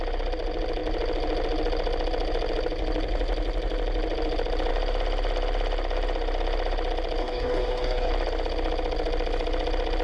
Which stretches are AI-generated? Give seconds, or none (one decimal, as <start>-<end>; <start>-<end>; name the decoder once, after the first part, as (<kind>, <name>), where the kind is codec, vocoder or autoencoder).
7.2-8.1 (codec, SNAC)